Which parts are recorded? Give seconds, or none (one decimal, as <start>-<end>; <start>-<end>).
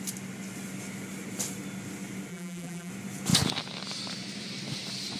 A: 0.0-2.3; 2.9-5.2